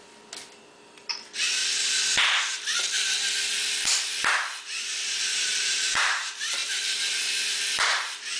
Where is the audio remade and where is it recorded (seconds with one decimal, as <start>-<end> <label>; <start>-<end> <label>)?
0.0-1.6 remade; 1.6-5.2 recorded; 5.2-8.4 remade